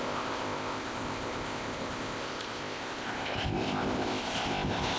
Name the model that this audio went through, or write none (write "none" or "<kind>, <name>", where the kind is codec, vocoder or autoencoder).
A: codec, ZipCodec